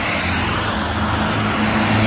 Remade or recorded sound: recorded